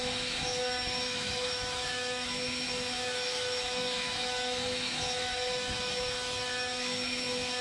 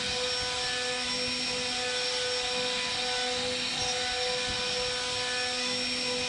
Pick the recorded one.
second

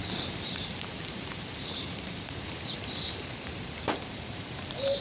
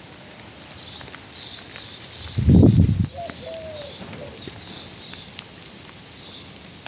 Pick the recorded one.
second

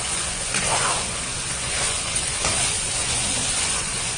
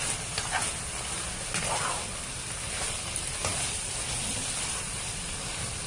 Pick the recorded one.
second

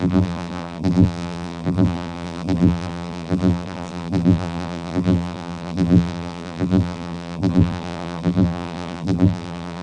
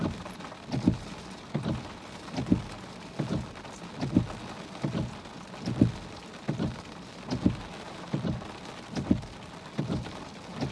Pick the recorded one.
second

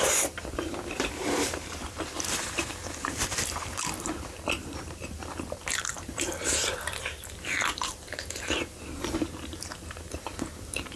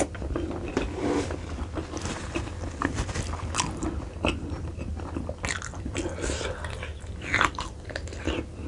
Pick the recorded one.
second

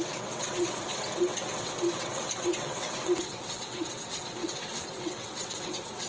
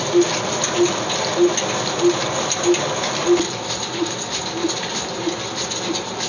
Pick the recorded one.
second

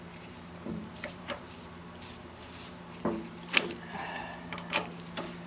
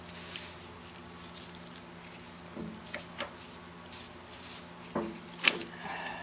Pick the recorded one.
second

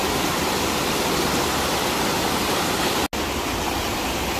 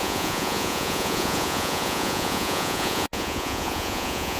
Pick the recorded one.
first